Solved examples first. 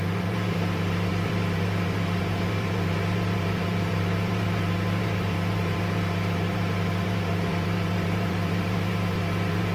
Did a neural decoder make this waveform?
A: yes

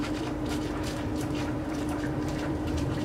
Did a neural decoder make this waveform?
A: yes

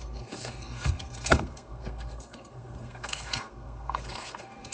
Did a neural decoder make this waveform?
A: yes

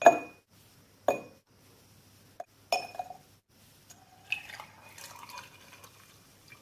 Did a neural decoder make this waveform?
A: no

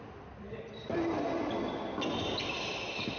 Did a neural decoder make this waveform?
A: no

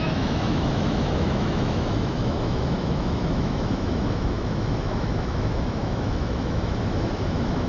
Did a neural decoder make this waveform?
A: yes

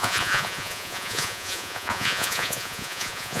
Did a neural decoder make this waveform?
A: yes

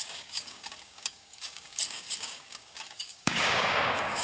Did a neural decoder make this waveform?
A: yes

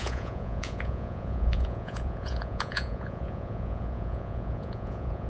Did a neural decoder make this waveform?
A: yes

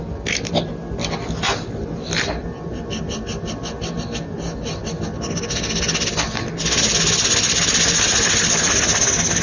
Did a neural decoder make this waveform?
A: no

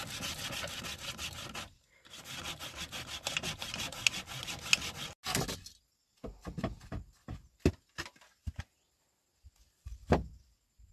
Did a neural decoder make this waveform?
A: no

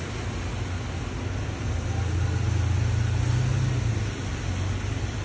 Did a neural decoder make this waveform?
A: no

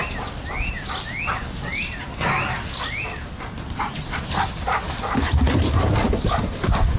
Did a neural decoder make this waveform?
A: no